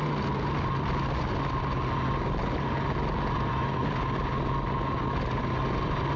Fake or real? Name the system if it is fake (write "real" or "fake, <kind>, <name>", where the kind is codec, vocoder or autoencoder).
real